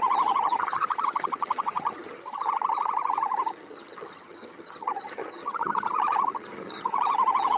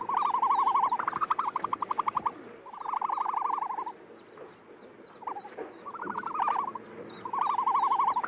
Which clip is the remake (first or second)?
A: first